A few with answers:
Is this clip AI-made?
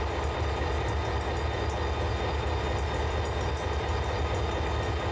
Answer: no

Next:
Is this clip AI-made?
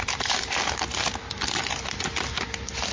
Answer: no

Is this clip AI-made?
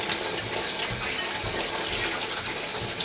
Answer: no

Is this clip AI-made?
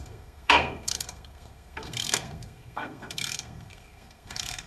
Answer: yes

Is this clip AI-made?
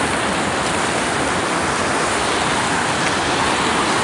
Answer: no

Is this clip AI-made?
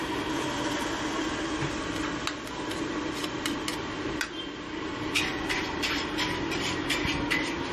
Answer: no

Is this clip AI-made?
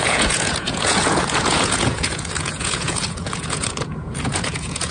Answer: yes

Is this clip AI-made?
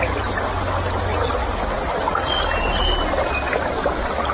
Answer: no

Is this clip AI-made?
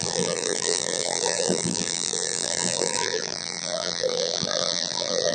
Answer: yes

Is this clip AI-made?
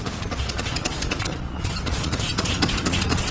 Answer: yes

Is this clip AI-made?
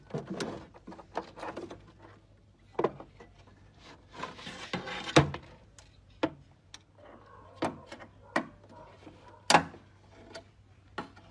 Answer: no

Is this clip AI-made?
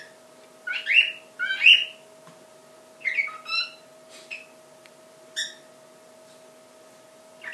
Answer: no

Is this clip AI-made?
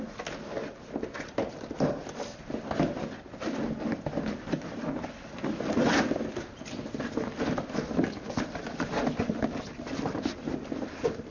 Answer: no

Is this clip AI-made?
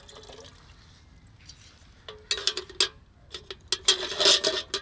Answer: no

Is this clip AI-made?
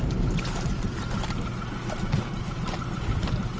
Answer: no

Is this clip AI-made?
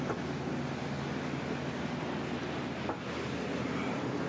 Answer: no